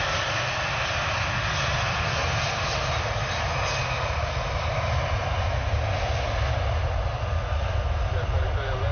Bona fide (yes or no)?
yes